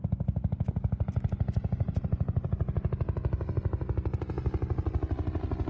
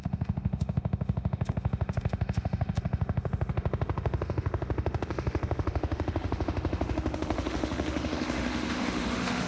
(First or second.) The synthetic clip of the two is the second